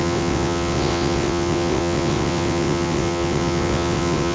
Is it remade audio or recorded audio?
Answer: remade